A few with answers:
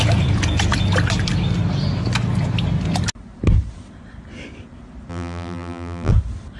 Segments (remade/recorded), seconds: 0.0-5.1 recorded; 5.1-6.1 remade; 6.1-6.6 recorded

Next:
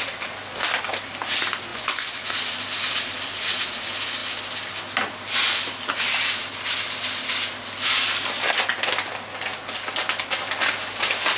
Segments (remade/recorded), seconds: 0.0-1.7 recorded; 1.7-2.3 remade; 2.3-11.4 recorded

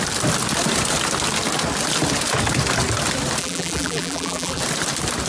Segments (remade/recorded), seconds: 0.0-3.4 recorded; 3.4-4.6 remade; 4.6-5.3 recorded

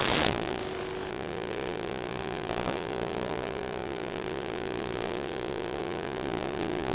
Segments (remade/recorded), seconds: 0.0-0.6 remade; 0.6-1.1 recorded; 1.1-6.9 remade

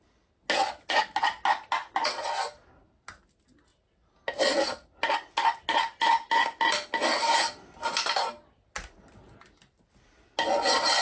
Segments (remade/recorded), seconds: 0.0-11.0 recorded

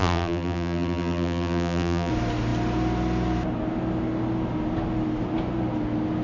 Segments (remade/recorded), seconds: 0.0-2.1 remade; 2.1-6.2 recorded

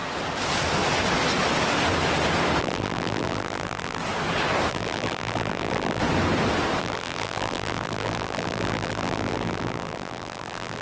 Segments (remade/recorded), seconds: 0.0-2.6 recorded; 2.6-4.0 remade; 4.0-4.7 recorded; 4.7-6.0 remade; 6.0-6.8 recorded; 6.8-10.8 remade

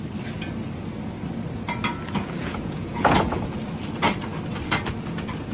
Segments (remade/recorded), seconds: 0.0-2.2 recorded; 2.2-3.6 remade; 3.6-5.5 recorded